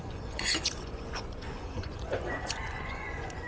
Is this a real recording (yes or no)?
no